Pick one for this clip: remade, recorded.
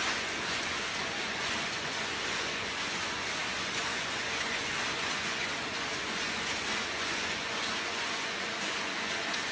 remade